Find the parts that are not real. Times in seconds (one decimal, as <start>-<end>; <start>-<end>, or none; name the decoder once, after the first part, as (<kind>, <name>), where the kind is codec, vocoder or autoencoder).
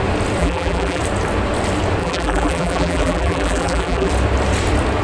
0.4-1.0 (vocoder, BigVGAN v2); 2.0-4.1